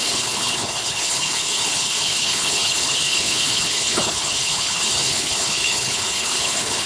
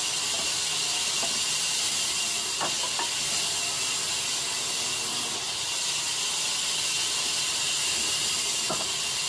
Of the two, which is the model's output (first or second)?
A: first